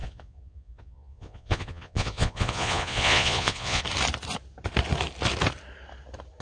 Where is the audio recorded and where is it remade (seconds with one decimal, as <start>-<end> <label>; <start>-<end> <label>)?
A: 0.0-3.8 remade; 3.8-6.4 recorded